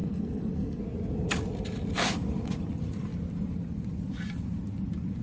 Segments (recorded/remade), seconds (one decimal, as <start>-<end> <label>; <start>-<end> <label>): 0.0-0.8 remade; 0.8-5.2 recorded